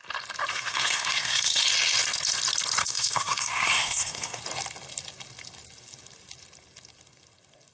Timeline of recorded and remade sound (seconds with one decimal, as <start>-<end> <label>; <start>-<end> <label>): 0.0-0.5 recorded; 0.5-1.6 remade; 1.6-2.8 recorded; 2.8-4.4 remade; 4.4-7.7 recorded